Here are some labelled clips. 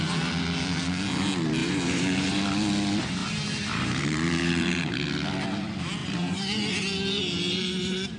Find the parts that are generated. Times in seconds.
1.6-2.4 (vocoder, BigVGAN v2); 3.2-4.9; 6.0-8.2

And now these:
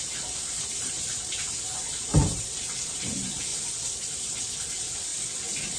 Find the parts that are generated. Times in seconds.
0.0-3.5 (vocoder, BigVGAN v2); 4.4-5.1

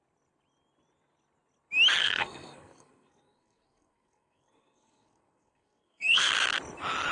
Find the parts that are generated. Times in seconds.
2.0-6.3 (codec, SNAC)

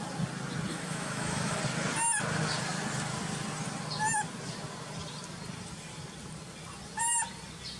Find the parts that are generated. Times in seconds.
0.7-1.6 (autoencoder, DAC-VAE)